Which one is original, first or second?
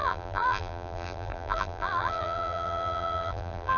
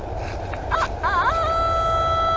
second